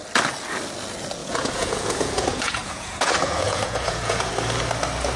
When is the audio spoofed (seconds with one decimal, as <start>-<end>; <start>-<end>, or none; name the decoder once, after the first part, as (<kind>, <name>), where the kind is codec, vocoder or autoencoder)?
1.2-4.3 (vocoder, Vocos)